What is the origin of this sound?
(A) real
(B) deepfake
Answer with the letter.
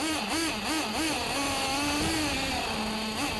A